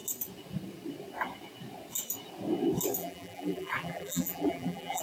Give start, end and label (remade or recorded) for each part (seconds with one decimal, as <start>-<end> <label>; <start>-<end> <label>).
0.0-3.0 recorded; 3.0-5.0 remade